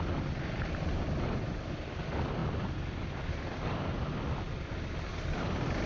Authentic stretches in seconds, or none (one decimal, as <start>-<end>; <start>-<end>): 0.0-0.9; 2.0-5.9